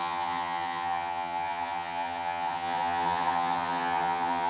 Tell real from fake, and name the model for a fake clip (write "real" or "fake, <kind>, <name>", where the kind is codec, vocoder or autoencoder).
fake, vocoder, HiFi-GAN